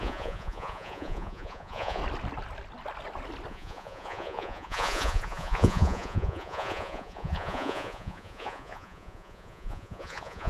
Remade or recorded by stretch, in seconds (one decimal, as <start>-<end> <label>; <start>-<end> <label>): 0.0-2.0 remade; 2.0-3.5 recorded; 3.5-10.5 remade